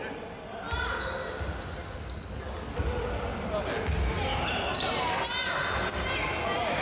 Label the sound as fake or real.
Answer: real